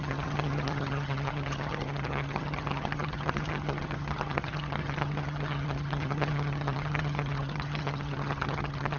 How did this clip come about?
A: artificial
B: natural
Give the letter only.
A